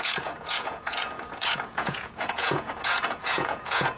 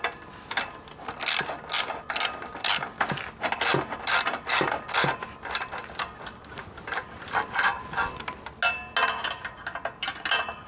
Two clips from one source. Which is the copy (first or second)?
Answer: first